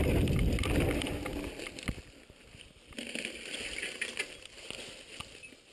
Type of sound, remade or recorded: recorded